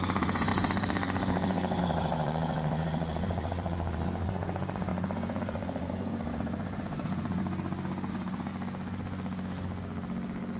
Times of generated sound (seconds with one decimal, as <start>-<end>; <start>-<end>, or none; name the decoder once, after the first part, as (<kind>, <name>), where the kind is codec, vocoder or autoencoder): 0.0-7.4 (vocoder, Vocos); 8.1-8.5